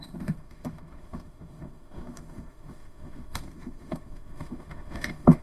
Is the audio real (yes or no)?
no